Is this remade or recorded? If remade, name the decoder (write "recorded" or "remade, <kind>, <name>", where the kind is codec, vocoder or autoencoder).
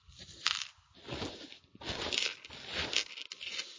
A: recorded